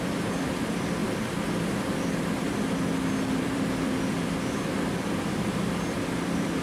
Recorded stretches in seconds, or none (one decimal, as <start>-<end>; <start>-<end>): 1.0-3.3